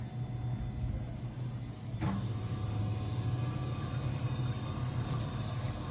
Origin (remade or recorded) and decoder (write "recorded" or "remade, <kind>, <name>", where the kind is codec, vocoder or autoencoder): recorded